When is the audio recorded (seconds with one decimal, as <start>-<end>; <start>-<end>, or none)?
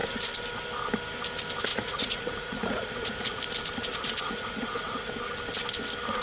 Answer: 0.0-1.7; 3.4-3.9; 5.1-6.2